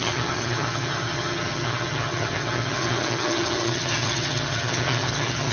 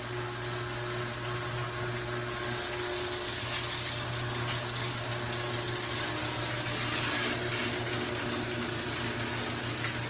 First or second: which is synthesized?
first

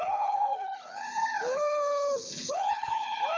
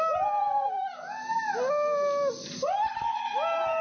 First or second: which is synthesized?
first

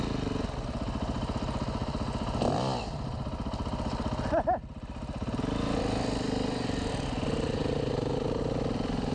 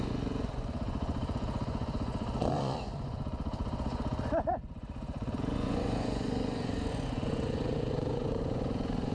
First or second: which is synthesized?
second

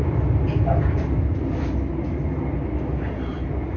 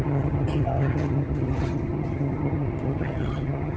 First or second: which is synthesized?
second